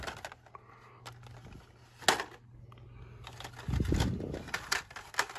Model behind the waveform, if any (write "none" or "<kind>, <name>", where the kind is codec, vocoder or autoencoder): none